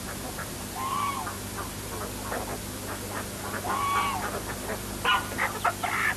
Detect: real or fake real